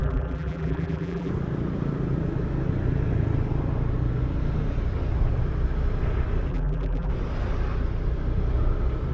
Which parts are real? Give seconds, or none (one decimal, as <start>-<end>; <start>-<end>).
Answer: 1.3-6.5; 7.1-9.1